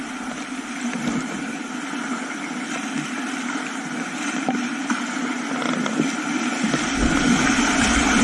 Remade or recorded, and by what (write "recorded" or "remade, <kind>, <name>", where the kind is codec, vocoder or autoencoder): recorded